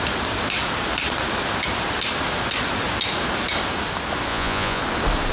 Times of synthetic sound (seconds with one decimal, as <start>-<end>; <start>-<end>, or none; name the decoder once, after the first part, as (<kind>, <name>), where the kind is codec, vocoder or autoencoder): 4.3-4.8 (vocoder, Vocos)